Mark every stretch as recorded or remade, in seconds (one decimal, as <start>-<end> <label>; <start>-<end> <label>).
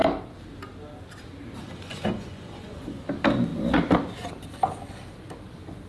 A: 0.0-1.6 recorded; 1.6-3.0 remade; 3.0-5.9 recorded